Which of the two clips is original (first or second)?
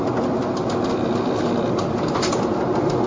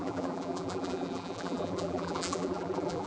first